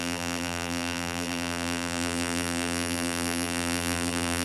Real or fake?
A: fake